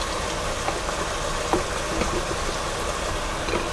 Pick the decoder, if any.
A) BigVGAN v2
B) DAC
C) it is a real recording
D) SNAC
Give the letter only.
C